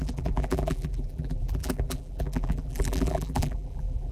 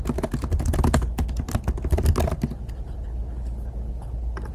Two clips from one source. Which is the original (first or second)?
second